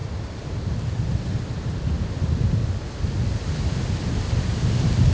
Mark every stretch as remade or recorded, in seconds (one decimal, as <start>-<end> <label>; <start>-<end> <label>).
0.0-5.1 recorded